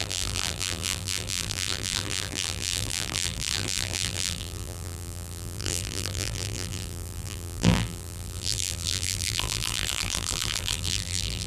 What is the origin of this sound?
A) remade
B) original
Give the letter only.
A